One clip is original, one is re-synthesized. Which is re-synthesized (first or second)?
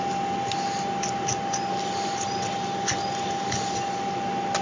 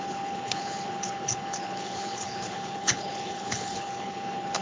second